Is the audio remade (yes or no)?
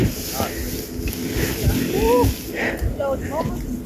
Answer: no